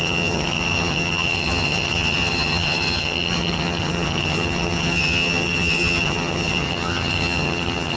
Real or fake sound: fake